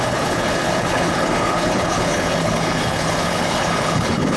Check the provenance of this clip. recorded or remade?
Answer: remade